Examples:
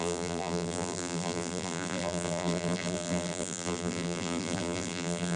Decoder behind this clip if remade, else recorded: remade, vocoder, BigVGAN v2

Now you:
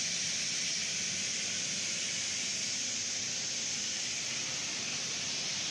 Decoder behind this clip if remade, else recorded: recorded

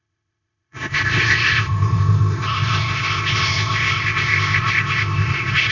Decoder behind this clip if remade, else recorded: remade, codec, ZipCodec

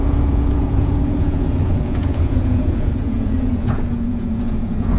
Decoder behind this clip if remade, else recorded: remade, vocoder, Vocos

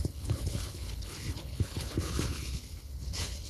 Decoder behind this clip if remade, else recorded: remade, codec, HILCodec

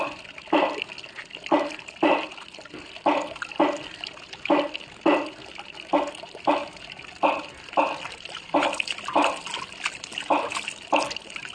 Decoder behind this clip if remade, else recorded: recorded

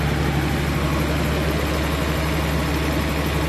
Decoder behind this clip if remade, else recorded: recorded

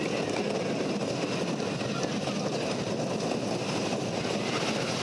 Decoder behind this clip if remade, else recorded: recorded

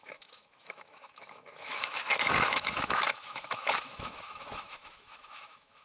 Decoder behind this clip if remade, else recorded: remade, autoencoder, DAC-VAE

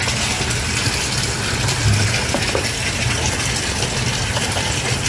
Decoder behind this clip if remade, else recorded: recorded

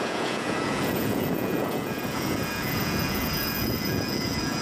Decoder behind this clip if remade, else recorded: remade, vocoder, Vocos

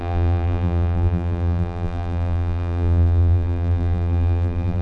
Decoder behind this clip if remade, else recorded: remade, vocoder, BigVGAN v2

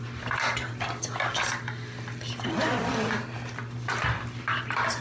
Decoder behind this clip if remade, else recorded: recorded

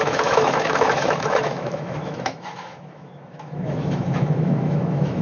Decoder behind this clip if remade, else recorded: remade, autoencoder, DAC-VAE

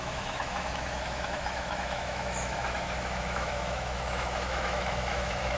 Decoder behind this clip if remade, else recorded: remade, autoencoder, DAC-VAE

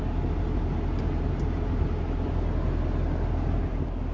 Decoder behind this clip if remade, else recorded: recorded